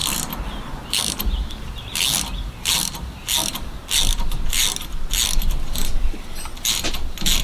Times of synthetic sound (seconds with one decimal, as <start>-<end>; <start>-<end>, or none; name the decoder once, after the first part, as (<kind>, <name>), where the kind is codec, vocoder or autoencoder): 0.0-1.6 (vocoder, BigVGAN v2); 3.8-5.1